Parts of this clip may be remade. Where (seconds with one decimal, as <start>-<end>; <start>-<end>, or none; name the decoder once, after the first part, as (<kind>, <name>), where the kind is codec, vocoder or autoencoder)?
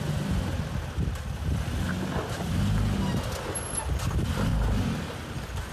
none